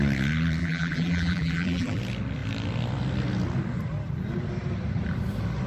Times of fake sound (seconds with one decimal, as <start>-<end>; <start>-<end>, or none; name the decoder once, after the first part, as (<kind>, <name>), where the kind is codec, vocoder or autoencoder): 0.6-2.0 (vocoder, BigVGAN v2)

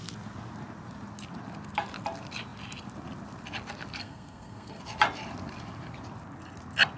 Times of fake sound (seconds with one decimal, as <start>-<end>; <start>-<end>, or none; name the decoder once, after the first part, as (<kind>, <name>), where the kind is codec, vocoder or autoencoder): 4.0-4.8 (codec, SNAC)

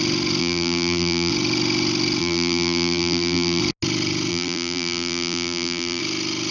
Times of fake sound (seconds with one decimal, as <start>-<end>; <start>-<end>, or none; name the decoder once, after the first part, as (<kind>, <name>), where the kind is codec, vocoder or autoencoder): 0.4-1.3 (vocoder, BigVGAN v2); 2.2-3.6; 4.3-6.0

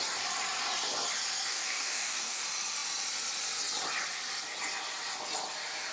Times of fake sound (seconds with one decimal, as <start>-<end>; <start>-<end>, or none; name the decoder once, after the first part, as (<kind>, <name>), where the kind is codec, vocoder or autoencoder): 1.5-2.4 (codec, DAC)

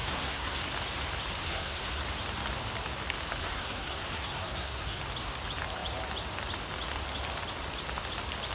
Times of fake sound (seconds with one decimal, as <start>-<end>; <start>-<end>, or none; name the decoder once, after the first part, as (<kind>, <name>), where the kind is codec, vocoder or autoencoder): 0.0-0.6 (codec, SNAC); 1.4-2.0; 3.4-5.0